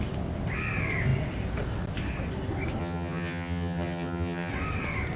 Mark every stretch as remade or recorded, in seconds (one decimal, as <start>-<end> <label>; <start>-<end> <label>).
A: 0.0-2.8 recorded; 2.8-4.5 remade; 4.5-5.2 recorded